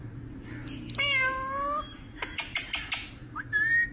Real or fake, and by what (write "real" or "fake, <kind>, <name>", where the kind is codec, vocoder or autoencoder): real